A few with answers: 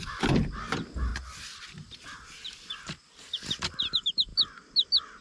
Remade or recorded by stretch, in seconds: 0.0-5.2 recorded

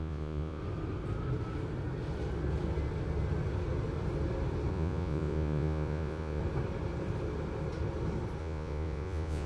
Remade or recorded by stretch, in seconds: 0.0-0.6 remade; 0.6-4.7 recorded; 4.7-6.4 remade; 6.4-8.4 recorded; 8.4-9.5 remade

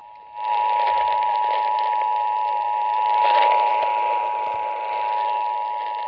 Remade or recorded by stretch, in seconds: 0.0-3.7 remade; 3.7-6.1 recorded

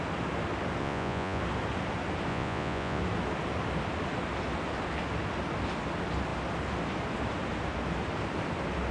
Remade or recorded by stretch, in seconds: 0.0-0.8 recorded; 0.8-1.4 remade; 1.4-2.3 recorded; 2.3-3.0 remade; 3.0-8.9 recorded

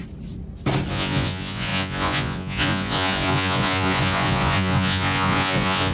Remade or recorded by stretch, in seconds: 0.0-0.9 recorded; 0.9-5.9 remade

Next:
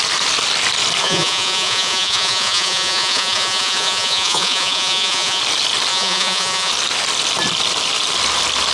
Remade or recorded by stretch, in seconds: 0.0-1.0 recorded; 1.0-5.4 remade; 5.4-5.9 recorded; 5.9-6.7 remade; 6.7-8.7 recorded